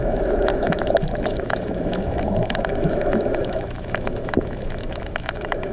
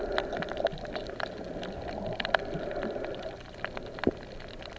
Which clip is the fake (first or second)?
first